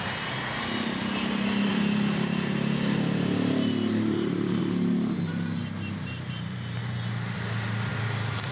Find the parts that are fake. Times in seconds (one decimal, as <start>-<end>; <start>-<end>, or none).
1.7-4.6; 5.6-6.8